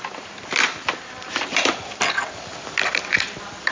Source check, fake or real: fake